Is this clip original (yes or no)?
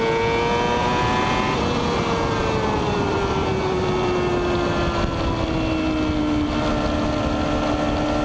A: yes